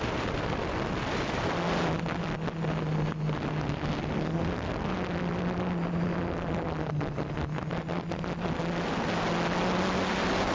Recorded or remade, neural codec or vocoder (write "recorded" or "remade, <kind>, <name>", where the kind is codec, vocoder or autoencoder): recorded